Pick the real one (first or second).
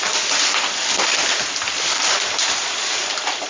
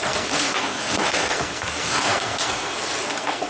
first